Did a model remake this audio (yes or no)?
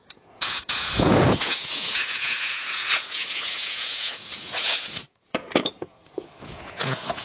yes